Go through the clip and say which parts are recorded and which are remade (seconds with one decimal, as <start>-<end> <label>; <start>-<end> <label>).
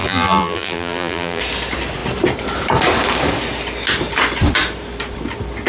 0.0-1.4 remade; 1.4-5.7 recorded